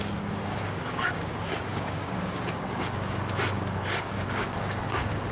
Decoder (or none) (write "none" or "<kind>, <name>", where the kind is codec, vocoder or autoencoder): codec, DAC